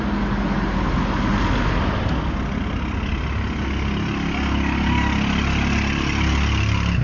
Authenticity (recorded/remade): recorded